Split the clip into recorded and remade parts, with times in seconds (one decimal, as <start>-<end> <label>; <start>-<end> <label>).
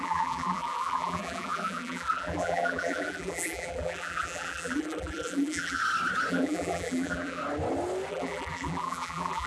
0.0-5.8 remade; 5.8-6.3 recorded; 6.3-7.4 remade; 7.4-8.1 recorded; 8.1-9.5 remade